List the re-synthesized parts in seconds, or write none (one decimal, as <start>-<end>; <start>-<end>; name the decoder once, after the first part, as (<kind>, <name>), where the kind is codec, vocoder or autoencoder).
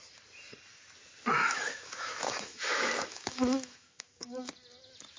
1.4-4.5 (autoencoder, DAC-VAE)